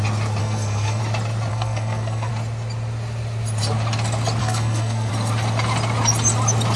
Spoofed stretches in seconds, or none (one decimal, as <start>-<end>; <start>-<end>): 0.4-1.0; 1.5-2.3; 4.4-5.1